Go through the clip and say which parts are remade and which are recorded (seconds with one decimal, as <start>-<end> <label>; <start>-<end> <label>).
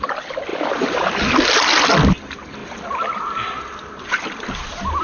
0.0-5.0 recorded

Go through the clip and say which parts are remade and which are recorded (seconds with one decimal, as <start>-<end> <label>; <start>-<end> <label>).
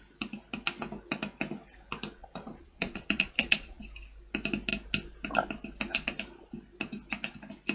0.0-2.2 recorded; 2.2-3.8 remade; 3.8-7.7 recorded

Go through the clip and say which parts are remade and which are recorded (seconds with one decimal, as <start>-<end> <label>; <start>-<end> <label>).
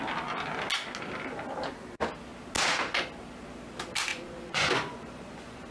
0.0-4.1 recorded; 4.1-5.7 remade